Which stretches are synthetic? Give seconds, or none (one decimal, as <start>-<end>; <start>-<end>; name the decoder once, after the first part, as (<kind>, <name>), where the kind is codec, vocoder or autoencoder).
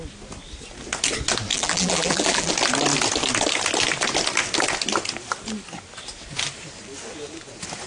1.5-2.5 (vocoder, BigVGAN v2)